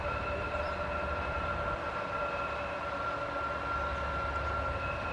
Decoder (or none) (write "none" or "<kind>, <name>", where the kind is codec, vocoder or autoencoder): none